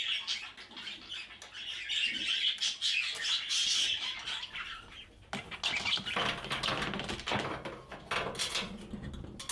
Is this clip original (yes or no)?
yes